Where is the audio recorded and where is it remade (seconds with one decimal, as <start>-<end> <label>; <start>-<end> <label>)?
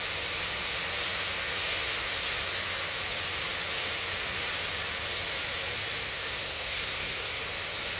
0.0-6.0 recorded; 6.0-7.4 remade; 7.4-8.0 recorded